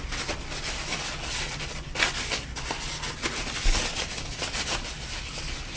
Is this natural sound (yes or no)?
yes